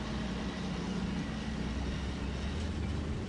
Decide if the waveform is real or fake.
real